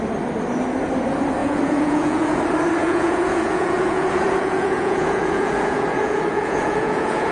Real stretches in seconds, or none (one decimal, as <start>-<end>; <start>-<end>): 0.0-1.4; 2.4-2.8